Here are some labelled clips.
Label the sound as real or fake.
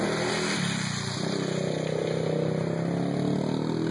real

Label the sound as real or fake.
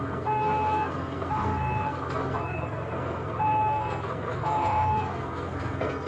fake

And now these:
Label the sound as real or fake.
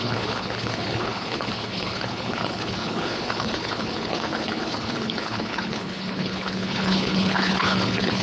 fake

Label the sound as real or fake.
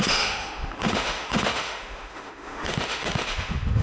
fake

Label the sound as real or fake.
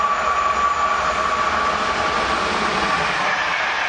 real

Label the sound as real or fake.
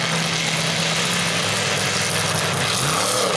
real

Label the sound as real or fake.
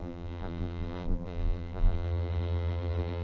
fake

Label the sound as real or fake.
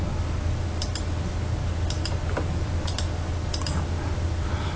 real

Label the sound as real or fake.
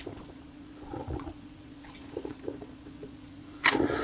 fake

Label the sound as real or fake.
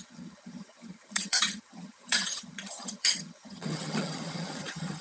fake